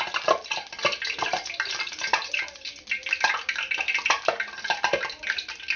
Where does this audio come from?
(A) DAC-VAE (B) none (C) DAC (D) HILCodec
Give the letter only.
B